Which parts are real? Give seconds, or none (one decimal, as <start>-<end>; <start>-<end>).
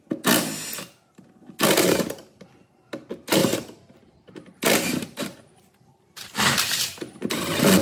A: 0.0-1.6; 2.7-3.4; 6.4-7.8